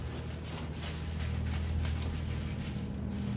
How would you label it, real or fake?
real